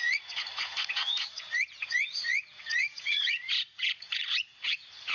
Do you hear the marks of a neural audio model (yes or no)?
yes